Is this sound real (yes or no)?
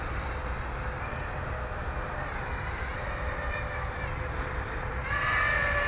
yes